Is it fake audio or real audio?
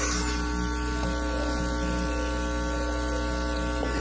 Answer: real